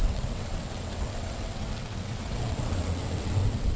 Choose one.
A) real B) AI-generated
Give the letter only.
B